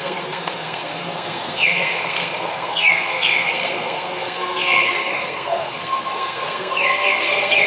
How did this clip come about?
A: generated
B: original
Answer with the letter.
A